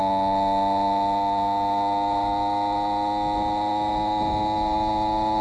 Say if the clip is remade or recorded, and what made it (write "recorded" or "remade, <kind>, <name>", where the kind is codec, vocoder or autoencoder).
recorded